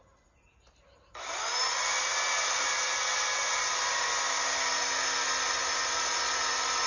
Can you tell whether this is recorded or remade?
recorded